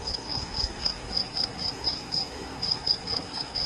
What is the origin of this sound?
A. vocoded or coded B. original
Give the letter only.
A